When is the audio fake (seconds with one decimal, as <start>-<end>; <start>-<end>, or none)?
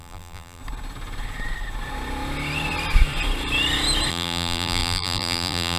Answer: 0.0-0.6; 4.1-5.8